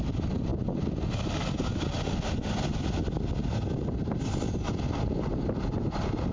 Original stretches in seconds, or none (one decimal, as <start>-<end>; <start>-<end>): 0.0-6.3